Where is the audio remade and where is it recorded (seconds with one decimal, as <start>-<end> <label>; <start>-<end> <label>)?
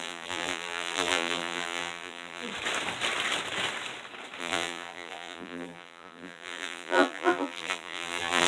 0.0-2.5 remade; 2.5-4.4 recorded; 4.4-8.5 remade